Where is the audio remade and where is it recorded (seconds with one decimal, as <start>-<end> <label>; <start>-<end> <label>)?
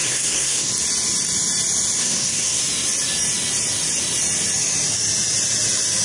0.0-0.7 remade; 0.7-2.0 recorded; 2.0-2.6 remade; 2.6-6.0 recorded